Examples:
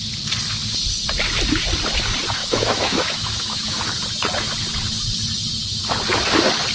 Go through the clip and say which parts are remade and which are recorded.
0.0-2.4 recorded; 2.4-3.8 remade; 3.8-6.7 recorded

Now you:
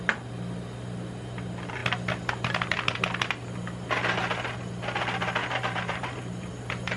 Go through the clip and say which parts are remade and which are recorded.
0.0-5.4 recorded; 5.4-6.5 remade; 6.5-7.0 recorded

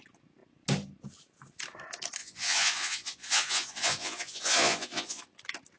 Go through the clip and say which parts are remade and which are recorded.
0.0-2.2 recorded; 2.2-5.2 remade; 5.2-5.8 recorded

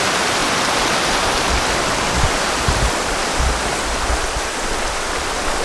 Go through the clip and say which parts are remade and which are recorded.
0.0-0.4 recorded; 0.4-3.8 remade; 3.8-5.6 recorded

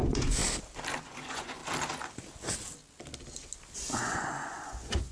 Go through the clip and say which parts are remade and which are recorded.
0.0-0.4 remade; 0.4-1.0 recorded; 1.0-1.6 remade; 1.6-4.0 recorded; 4.0-5.1 remade